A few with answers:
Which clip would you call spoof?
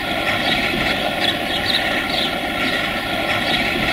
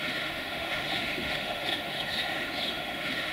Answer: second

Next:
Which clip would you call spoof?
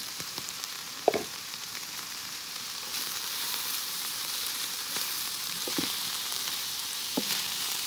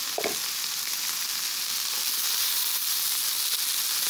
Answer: first